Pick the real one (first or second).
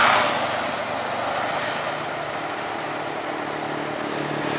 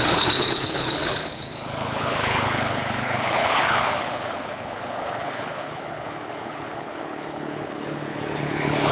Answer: first